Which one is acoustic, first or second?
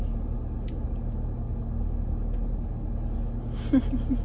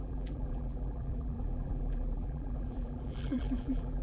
first